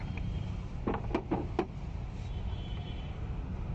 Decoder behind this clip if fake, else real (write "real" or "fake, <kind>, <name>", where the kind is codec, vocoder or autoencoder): real